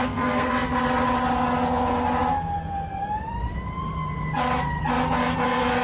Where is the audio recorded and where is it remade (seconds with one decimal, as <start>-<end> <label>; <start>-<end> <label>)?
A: 0.0-0.5 remade; 0.5-5.8 recorded